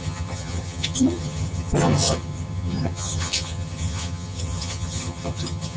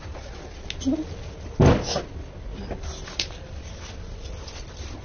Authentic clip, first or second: second